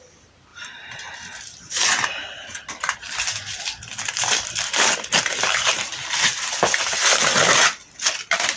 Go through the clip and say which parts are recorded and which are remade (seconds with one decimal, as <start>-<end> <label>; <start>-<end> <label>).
0.0-0.5 recorded; 0.5-2.7 remade; 2.7-3.3 recorded; 3.3-7.6 remade; 7.6-8.6 recorded

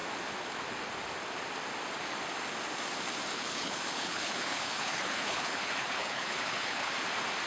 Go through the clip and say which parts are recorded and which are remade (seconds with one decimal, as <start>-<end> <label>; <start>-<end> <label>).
0.0-3.3 recorded; 3.3-6.9 remade; 6.9-7.5 recorded

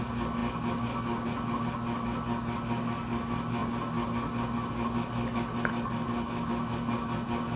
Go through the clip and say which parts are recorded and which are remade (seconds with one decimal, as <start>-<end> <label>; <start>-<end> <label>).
0.0-7.6 recorded

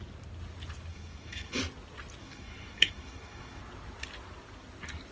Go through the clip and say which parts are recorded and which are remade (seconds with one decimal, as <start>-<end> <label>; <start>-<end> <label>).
0.0-0.9 recorded; 0.9-1.6 remade; 1.6-2.2 recorded; 2.2-3.6 remade; 3.6-5.1 recorded

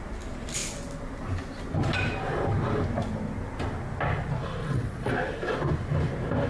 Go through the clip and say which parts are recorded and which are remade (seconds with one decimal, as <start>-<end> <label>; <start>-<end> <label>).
0.0-4.6 recorded; 4.6-5.1 remade; 5.1-6.5 recorded

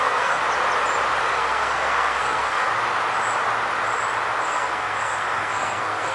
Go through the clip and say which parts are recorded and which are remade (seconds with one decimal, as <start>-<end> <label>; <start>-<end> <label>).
0.0-0.4 remade; 0.4-1.3 recorded; 1.3-2.7 remade; 2.7-4.4 recorded; 4.4-6.1 remade

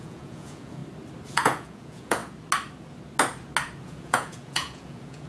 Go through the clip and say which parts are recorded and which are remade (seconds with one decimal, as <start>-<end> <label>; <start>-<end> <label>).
0.0-0.8 remade; 0.8-1.3 recorded; 1.3-2.2 remade; 2.2-3.8 recorded; 3.8-5.3 remade

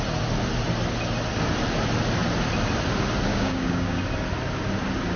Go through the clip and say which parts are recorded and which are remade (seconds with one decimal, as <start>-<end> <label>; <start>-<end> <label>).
0.0-3.3 recorded; 3.3-4.0 remade; 4.0-5.2 recorded